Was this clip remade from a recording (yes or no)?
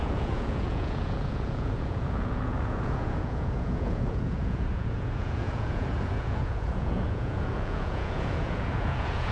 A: yes